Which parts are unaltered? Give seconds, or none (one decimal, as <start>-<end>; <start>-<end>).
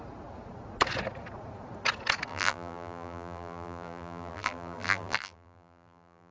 0.0-2.3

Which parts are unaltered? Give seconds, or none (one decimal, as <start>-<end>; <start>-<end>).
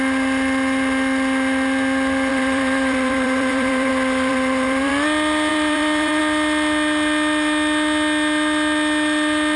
0.0-2.3; 3.9-4.3; 4.9-5.5; 6.2-9.6